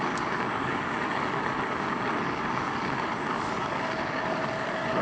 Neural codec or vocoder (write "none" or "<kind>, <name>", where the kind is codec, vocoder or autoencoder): codec, DAC